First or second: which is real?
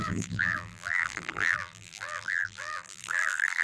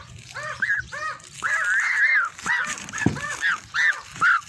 second